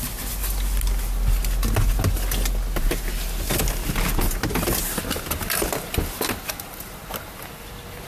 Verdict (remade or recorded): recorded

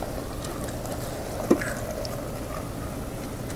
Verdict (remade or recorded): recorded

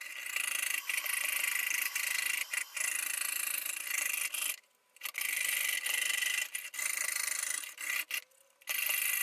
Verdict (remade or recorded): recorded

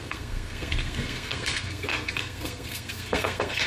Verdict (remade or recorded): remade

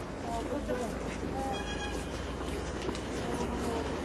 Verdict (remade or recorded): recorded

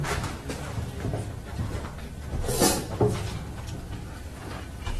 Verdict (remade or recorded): recorded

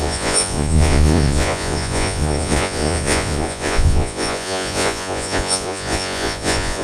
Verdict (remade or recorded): remade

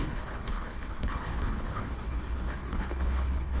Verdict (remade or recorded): remade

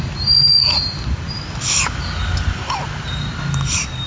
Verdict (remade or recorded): recorded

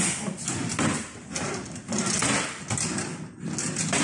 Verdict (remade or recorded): recorded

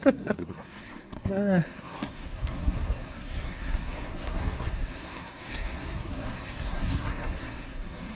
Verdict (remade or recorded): remade